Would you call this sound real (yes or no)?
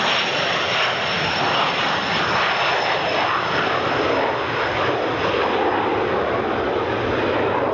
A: yes